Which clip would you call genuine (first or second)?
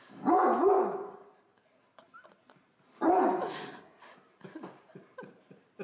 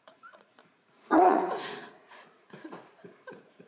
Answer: first